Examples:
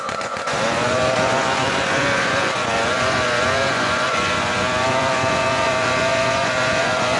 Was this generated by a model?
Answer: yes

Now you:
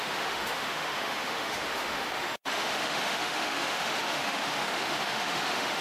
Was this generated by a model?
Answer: yes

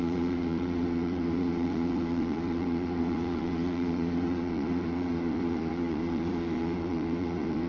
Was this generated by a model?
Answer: yes